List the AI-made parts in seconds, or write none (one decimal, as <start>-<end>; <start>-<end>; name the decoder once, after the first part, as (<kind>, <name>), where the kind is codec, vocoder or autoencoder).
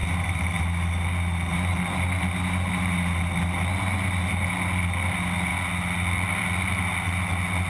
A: none